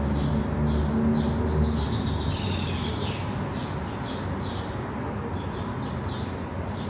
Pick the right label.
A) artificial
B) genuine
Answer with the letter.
B